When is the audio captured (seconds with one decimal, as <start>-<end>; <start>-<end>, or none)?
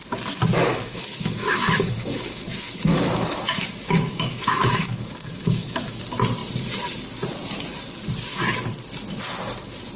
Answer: 0.0-0.7; 6.0-10.0